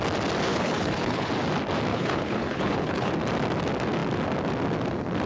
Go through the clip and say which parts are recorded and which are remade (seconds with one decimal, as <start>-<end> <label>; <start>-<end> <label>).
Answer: 0.0-0.5 recorded; 0.5-1.3 remade; 1.3-1.9 recorded; 1.9-3.1 remade; 3.1-5.3 recorded